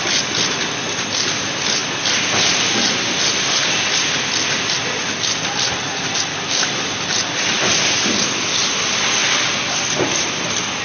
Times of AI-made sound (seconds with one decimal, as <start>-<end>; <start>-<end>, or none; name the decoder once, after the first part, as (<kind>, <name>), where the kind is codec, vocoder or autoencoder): none